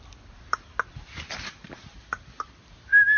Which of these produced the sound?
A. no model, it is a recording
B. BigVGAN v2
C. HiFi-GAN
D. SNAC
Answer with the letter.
A